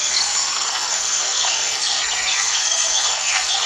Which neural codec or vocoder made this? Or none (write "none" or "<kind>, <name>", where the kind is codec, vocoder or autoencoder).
codec, SNAC